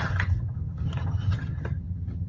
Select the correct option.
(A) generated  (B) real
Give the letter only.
A